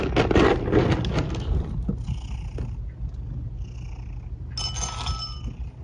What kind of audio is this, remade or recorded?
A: recorded